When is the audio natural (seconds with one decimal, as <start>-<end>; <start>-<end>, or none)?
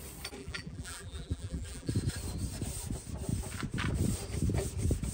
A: 0.0-0.4; 1.9-5.1